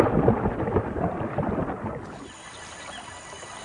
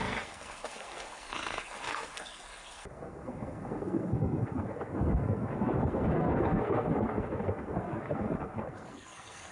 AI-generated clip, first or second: second